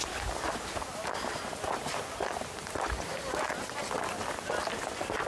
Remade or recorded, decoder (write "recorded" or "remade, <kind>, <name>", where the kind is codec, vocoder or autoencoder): recorded